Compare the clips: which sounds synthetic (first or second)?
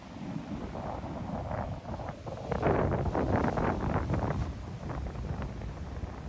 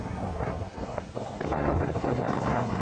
second